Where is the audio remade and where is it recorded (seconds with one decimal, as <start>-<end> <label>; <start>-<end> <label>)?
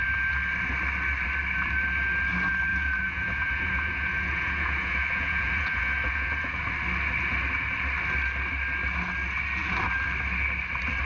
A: 0.0-2.7 recorded; 2.7-6.6 remade; 6.6-11.0 recorded